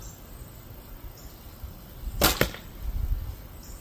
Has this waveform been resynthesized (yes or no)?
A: no